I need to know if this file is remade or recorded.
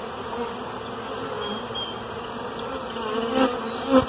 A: recorded